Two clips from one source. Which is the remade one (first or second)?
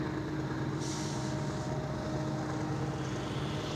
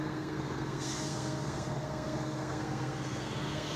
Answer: second